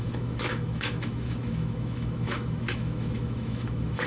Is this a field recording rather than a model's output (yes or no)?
no